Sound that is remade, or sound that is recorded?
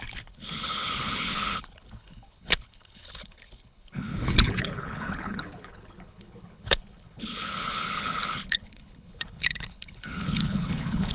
remade